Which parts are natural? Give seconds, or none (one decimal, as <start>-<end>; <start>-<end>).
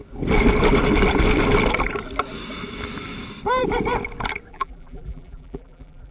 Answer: 0.0-4.5